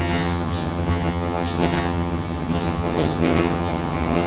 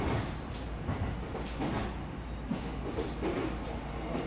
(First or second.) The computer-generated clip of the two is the first